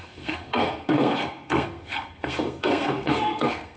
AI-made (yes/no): yes